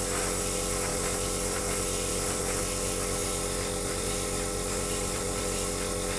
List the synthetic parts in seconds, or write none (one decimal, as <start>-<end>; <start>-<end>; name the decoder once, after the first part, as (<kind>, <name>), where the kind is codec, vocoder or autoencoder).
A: 0.9-1.6 (vocoder, BigVGAN v2); 2.1-2.6; 3.2-5.4